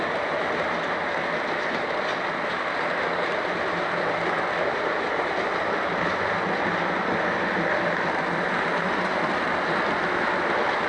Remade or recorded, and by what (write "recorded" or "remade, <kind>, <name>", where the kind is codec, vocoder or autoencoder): recorded